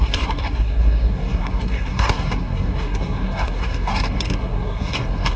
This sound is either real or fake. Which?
fake